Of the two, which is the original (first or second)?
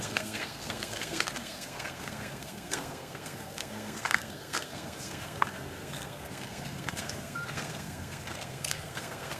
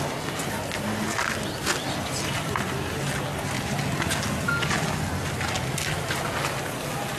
second